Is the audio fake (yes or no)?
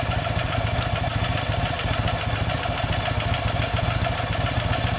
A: no